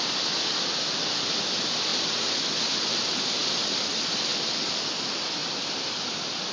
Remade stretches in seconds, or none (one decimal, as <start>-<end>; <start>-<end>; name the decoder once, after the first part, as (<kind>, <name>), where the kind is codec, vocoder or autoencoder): 5.4-6.5 (vocoder, BigVGAN v2)

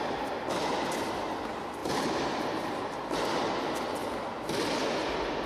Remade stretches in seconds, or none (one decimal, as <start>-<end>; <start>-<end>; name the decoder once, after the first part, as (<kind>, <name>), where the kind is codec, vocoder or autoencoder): 1.8-3.6 (vocoder, BigVGAN v2)

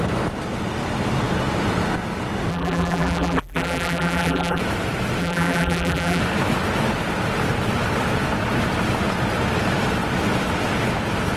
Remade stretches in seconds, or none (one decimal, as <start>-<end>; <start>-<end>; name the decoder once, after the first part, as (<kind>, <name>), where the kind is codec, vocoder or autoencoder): 2.5-4.6 (vocoder, BigVGAN v2); 5.2-6.2

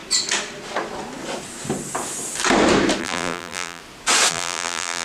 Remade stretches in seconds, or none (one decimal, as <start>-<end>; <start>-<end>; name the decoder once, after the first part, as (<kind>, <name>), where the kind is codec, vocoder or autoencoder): 3.0-3.8 (vocoder, BigVGAN v2); 4.3-5.0

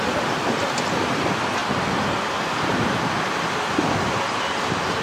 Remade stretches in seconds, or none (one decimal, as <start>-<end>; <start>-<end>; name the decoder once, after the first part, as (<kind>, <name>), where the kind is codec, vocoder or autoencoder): none